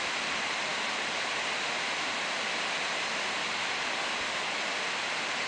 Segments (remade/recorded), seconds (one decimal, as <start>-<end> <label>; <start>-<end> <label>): 0.0-5.5 recorded